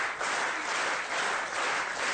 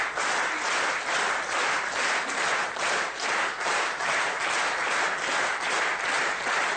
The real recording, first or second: second